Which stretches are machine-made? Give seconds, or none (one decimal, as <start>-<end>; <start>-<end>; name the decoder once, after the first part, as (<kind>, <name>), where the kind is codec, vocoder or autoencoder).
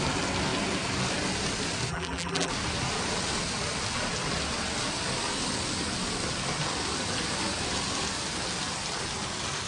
1.9-2.5 (vocoder, BigVGAN v2)